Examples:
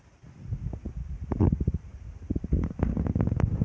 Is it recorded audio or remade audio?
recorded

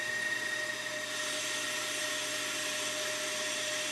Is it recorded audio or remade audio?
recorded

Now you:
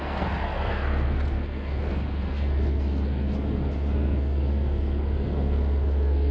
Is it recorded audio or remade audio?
remade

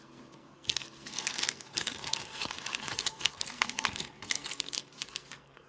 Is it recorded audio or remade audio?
remade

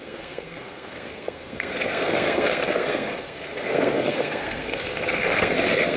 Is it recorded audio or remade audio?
remade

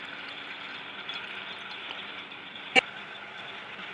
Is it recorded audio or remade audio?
recorded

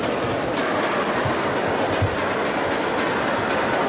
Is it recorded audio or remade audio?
recorded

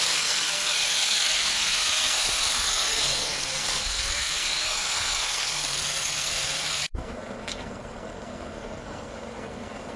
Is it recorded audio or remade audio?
remade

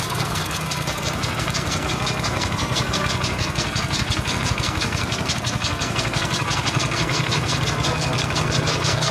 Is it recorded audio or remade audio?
remade